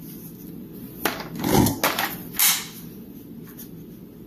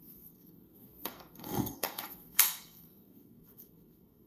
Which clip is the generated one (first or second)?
second